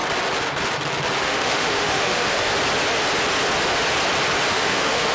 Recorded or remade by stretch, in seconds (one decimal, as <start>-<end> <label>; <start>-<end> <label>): 0.0-1.2 recorded; 1.2-2.5 remade; 2.5-4.5 recorded; 4.5-5.1 remade